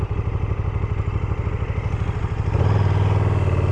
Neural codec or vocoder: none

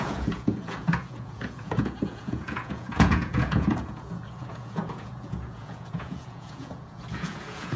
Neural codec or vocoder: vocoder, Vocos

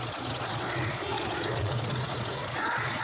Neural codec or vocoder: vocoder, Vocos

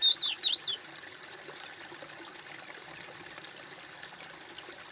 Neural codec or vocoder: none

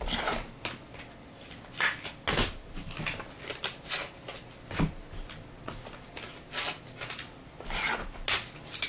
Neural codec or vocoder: none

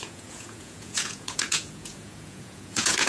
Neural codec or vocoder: vocoder, Vocos